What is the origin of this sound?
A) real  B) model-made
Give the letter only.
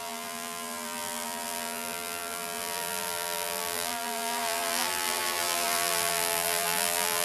B